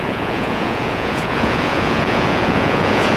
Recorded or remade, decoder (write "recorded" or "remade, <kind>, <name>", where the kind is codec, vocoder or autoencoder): remade, vocoder, Vocos